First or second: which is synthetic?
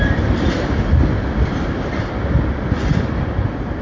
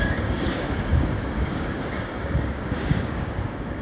second